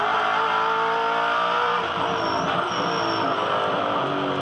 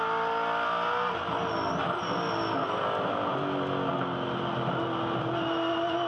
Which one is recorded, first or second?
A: second